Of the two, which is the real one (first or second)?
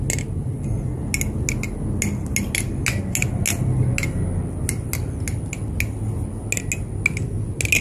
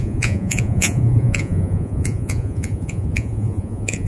first